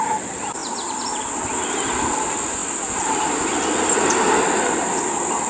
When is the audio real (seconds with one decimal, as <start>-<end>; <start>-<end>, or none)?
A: 0.0-5.5